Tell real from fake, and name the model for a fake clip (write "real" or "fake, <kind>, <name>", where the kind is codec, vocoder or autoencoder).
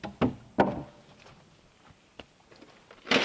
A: real